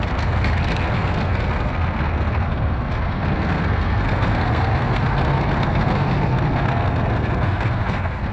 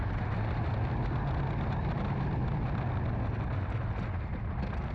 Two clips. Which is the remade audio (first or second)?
first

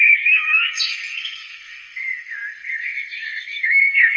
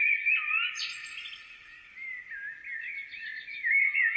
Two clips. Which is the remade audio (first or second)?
first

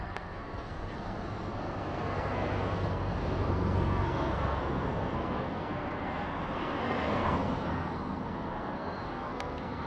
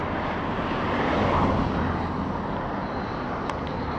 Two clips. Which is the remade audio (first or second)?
first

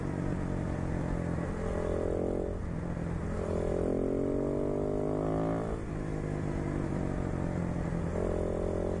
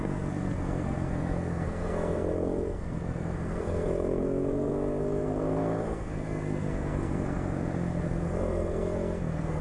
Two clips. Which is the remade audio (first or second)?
second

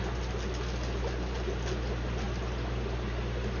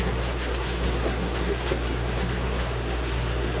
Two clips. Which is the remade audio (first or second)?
second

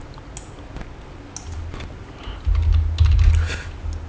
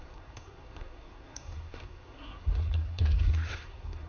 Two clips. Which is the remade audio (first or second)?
second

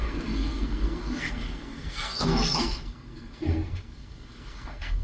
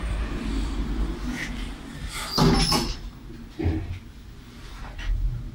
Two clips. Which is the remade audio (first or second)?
first